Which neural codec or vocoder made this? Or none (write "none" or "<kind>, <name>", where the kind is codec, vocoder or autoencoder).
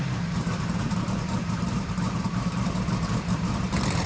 vocoder, BigVGAN v2